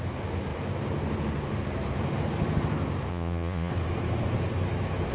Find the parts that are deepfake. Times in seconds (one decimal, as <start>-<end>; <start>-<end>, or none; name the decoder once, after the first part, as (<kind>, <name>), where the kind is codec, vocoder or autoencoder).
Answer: 3.1-3.7 (vocoder, Vocos)